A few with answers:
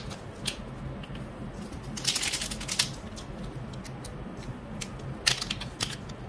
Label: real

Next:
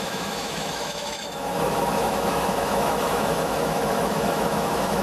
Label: fake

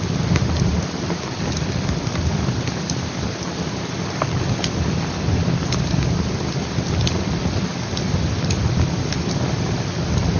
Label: real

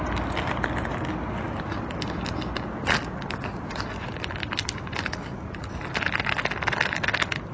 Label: real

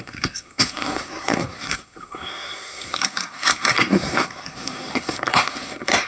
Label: fake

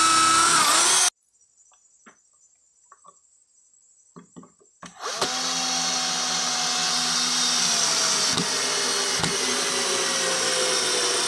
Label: real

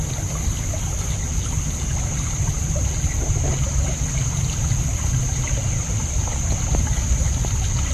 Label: real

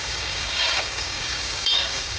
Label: fake